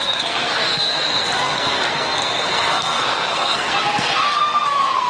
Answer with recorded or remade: remade